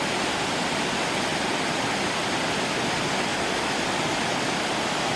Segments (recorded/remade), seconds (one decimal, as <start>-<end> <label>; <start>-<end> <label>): 0.0-5.2 recorded